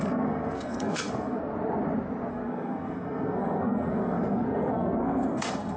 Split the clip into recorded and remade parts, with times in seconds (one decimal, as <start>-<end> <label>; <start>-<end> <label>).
0.0-1.5 remade; 1.5-2.3 recorded; 2.3-5.8 remade